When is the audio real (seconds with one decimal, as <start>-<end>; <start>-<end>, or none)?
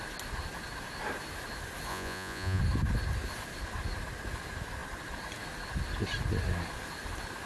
0.0-1.9; 2.6-7.5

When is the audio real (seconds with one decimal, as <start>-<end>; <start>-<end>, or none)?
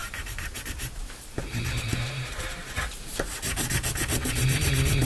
3.0-5.0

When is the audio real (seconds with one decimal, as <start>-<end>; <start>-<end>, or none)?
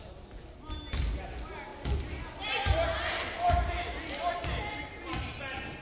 0.0-5.8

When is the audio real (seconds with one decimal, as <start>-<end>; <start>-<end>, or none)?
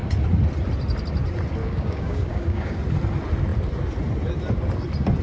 0.0-1.6; 2.8-5.2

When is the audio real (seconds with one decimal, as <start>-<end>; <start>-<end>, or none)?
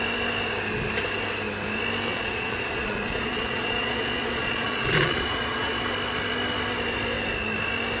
0.0-2.1; 5.8-8.0